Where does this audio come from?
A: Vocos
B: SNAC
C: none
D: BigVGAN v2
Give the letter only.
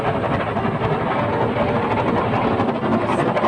C